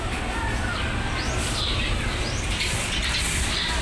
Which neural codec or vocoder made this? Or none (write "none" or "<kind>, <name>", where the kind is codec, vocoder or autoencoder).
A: none